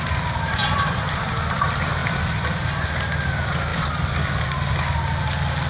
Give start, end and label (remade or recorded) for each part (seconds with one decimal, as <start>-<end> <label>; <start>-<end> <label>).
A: 0.0-0.6 recorded; 0.6-1.3 remade; 1.3-3.7 recorded; 3.7-4.5 remade; 4.5-5.7 recorded